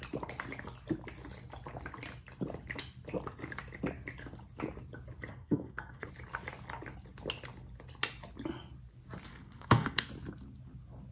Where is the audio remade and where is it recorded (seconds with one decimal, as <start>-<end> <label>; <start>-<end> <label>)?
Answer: 0.0-5.3 recorded; 5.3-6.1 remade; 6.1-9.3 recorded; 9.3-10.1 remade; 10.1-11.1 recorded